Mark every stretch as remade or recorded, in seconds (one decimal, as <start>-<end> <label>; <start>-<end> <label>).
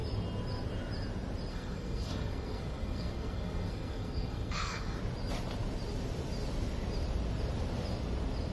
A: 0.0-1.5 recorded; 1.5-5.0 remade; 5.0-8.5 recorded